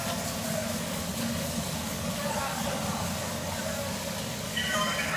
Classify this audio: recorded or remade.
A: remade